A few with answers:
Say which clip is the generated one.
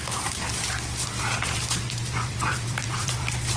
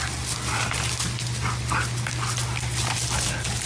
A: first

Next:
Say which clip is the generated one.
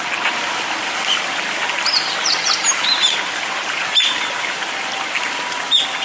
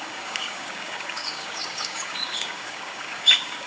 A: second